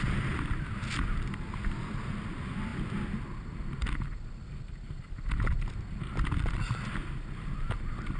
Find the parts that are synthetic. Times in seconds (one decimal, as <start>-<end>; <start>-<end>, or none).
none

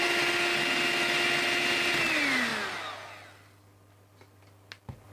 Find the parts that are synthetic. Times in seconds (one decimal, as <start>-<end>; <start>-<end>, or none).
none

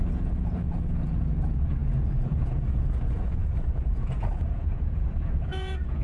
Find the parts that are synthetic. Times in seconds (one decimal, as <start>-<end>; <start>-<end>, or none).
0.0-6.0

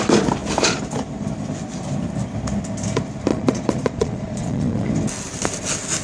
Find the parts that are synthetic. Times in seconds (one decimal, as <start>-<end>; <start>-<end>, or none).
3.3-4.9

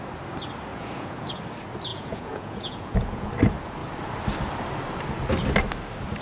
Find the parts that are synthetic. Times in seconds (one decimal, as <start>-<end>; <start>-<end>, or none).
0.7-1.3; 1.9-3.3

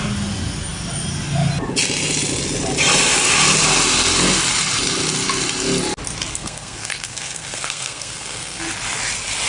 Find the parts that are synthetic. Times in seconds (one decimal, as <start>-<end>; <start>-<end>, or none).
6.3-8.6